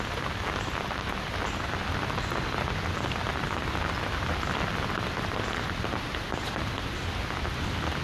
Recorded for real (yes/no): yes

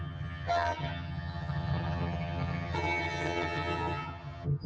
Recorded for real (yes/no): no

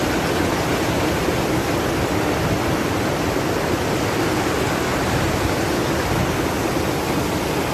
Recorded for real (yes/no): yes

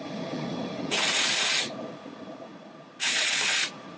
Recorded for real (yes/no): no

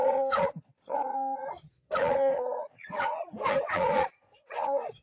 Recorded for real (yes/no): no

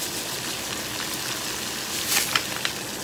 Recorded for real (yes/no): yes